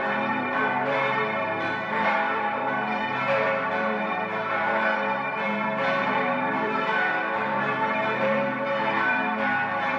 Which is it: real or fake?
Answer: fake